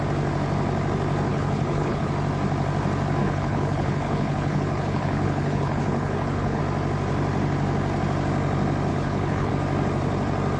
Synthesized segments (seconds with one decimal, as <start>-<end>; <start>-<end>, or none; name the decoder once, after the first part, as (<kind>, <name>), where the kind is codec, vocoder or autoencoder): 1.3-2.1 (codec, HILCodec); 3.2-6.6; 8.9-9.5